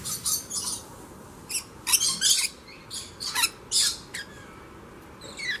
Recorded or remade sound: recorded